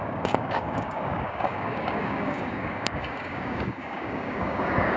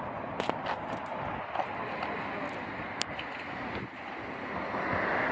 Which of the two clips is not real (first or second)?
first